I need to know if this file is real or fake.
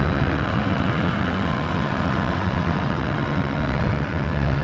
fake